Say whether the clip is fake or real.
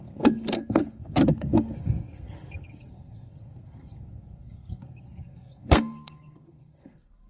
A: fake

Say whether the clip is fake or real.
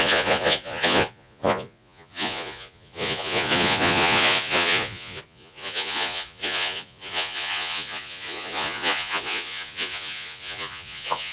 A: fake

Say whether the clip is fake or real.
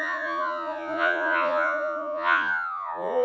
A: fake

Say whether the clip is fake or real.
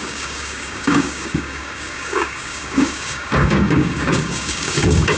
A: fake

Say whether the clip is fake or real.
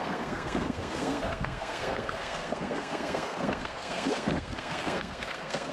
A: fake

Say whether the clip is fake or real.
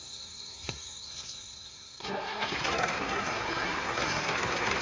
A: fake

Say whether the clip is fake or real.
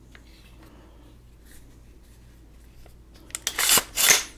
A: real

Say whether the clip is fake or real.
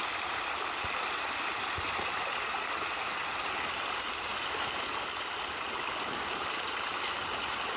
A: real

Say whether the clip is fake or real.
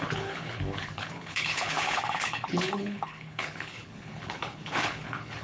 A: fake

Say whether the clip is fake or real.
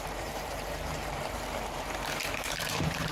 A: fake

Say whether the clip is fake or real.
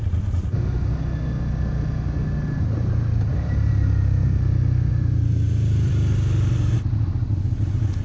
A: real